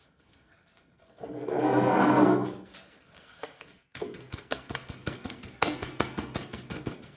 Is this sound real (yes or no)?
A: no